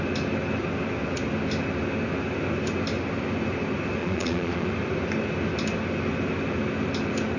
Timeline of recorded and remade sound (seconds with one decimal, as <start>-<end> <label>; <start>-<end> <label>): 0.0-4.0 recorded; 4.0-4.7 remade; 4.7-7.4 recorded